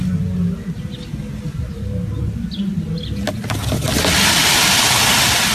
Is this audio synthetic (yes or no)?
no